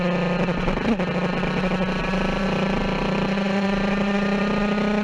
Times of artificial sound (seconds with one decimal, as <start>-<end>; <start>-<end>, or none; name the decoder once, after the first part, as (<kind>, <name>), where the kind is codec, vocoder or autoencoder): 2.0-4.4 (vocoder, BigVGAN v2)